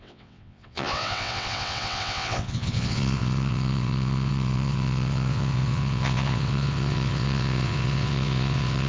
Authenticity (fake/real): fake